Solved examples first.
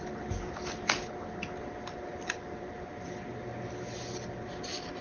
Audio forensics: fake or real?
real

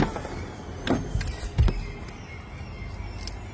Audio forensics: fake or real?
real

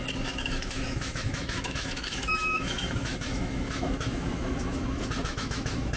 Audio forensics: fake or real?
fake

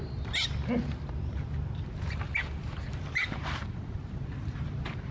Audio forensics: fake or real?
real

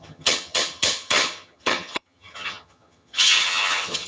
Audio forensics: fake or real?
fake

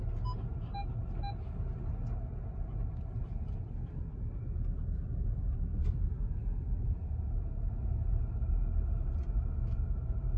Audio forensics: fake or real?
real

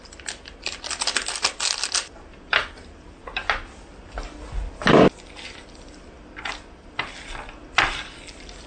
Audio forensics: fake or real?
real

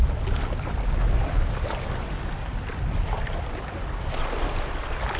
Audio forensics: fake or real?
real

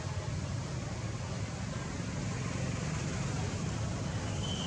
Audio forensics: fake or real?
real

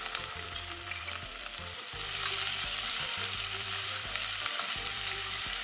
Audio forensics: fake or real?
fake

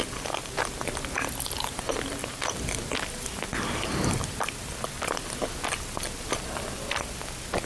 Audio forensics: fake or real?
real